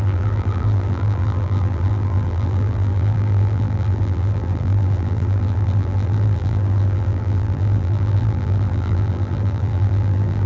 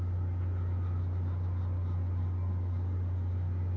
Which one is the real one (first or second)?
second